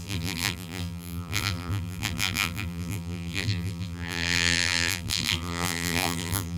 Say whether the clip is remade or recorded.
remade